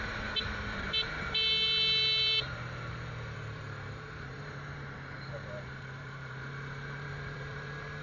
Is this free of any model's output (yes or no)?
no